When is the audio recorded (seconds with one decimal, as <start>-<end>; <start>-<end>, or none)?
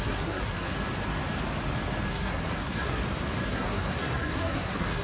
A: 0.7-2.1; 3.0-3.5